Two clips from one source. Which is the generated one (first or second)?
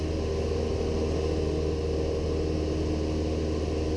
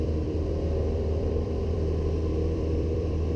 second